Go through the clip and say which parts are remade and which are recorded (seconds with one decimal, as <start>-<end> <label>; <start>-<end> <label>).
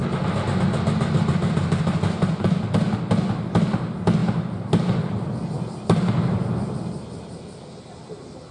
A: 0.0-8.5 recorded